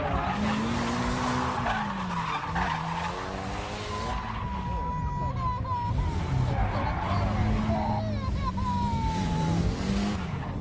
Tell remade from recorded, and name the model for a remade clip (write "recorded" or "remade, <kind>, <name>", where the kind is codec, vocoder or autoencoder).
recorded